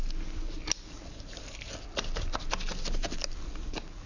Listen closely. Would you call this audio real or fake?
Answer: real